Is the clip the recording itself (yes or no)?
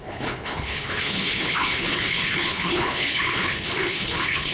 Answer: no